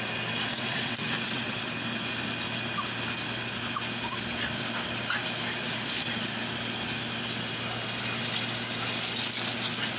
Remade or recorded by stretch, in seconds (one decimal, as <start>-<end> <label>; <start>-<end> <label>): 0.0-0.5 recorded; 0.5-1.6 remade; 1.6-10.0 recorded